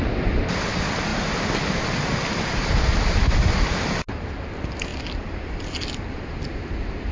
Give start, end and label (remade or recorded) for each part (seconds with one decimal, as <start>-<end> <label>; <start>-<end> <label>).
0.0-7.1 recorded